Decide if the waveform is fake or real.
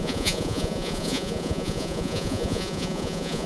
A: fake